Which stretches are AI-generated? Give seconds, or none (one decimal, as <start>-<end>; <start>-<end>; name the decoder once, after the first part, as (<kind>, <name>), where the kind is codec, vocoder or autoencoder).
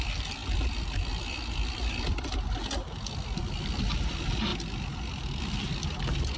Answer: none